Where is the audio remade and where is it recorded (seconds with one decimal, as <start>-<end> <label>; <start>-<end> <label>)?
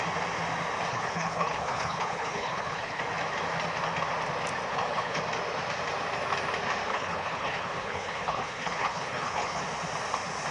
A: 0.0-0.9 recorded; 0.9-3.0 remade; 3.0-4.7 recorded; 4.7-5.2 remade; 5.2-6.9 recorded; 6.9-9.6 remade; 9.6-10.5 recorded